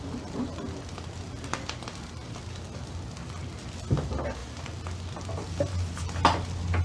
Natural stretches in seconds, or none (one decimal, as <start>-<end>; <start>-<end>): 0.0-6.8